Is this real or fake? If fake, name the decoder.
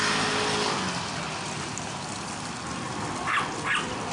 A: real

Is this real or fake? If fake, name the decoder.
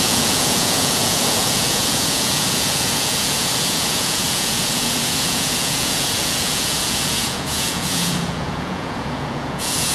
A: fake, vocoder, Vocos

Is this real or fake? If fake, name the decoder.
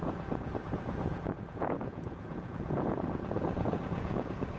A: fake, vocoder, Vocos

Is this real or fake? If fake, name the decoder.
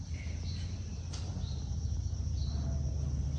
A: real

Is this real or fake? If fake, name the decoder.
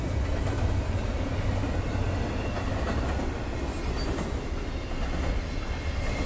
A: real